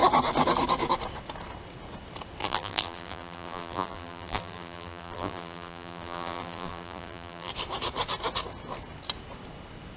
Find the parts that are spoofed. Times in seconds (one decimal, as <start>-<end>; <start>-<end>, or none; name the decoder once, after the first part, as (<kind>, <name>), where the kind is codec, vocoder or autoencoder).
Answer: 2.4-7.5 (vocoder, BigVGAN v2)